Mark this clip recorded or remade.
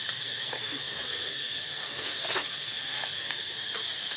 remade